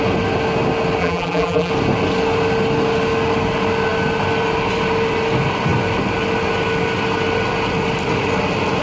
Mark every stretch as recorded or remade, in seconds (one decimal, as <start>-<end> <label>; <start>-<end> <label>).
0.0-1.0 recorded; 1.0-1.7 remade; 1.7-8.8 recorded